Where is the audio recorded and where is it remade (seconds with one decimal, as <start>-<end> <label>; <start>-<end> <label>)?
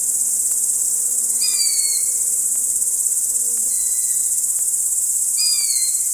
0.0-3.7 recorded; 3.7-4.2 remade; 4.2-6.1 recorded